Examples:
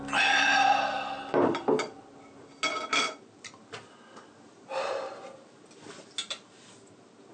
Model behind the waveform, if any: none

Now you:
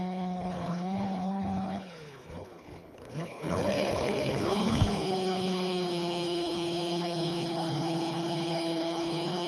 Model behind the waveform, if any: codec, HILCodec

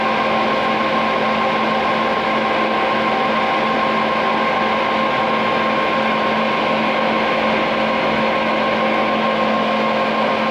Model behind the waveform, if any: none